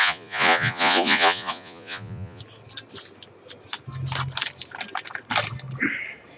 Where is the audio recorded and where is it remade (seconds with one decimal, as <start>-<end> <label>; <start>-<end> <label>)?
0.0-2.4 remade; 2.4-6.4 recorded